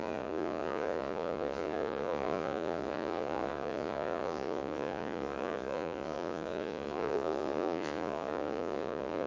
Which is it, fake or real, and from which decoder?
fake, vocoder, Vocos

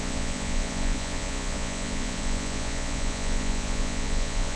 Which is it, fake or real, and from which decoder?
fake, vocoder, Vocos